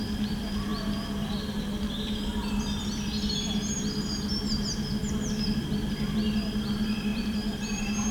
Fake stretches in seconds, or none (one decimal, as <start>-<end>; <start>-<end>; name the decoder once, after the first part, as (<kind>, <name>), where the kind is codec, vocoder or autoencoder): 7.1-8.1 (vocoder, BigVGAN v2)